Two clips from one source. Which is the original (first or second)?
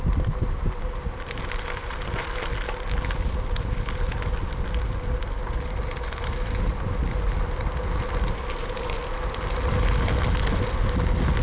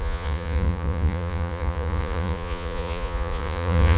first